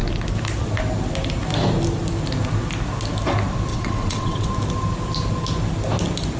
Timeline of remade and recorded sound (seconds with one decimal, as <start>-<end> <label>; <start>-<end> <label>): 0.0-3.7 recorded; 3.7-4.5 remade; 4.5-6.4 recorded